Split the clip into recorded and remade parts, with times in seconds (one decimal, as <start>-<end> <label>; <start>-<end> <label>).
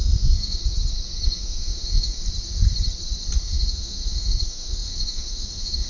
0.0-0.6 remade; 0.6-1.4 recorded; 1.4-2.2 remade; 2.2-3.4 recorded; 3.4-5.9 remade